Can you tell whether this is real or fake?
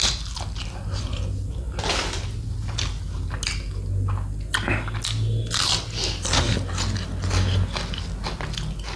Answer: real